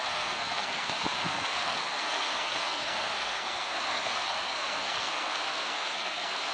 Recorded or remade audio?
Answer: remade